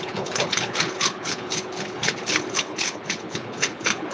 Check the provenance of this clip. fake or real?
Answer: fake